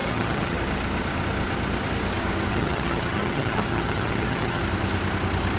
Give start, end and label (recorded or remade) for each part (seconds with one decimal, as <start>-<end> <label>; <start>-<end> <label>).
0.0-0.6 remade; 0.6-2.5 recorded; 2.5-4.6 remade; 4.6-5.6 recorded